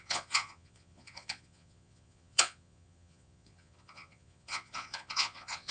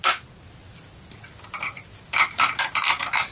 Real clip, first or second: second